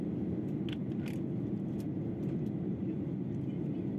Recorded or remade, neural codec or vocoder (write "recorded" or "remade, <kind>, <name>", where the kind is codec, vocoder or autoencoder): recorded